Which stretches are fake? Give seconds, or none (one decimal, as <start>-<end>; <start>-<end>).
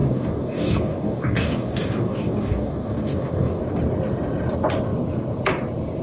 0.0-3.6